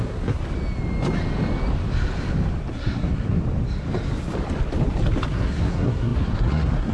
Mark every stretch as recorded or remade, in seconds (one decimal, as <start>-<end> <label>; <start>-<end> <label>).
0.0-0.4 remade; 0.4-2.7 recorded; 2.7-3.4 remade; 3.4-5.3 recorded; 5.3-6.9 remade